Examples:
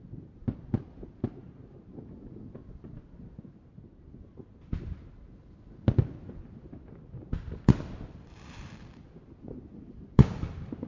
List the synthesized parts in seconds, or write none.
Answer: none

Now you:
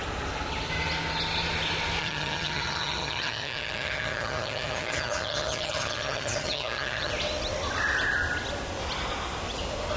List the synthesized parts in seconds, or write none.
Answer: 2.0-7.1 (vocoder, HiFi-GAN)